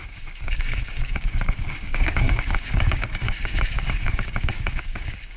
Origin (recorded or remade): remade